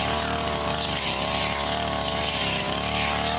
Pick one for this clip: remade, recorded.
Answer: recorded